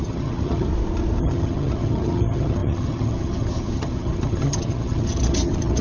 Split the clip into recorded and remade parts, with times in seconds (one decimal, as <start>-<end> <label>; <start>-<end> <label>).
0.0-0.7 remade; 0.7-1.2 recorded; 1.2-5.8 remade